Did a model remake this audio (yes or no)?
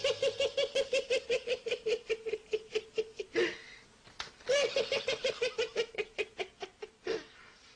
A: no